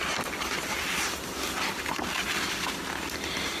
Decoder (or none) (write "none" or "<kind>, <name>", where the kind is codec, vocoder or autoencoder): none